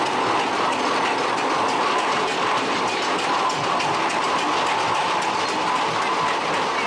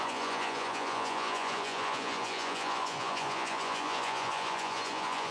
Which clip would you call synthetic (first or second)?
second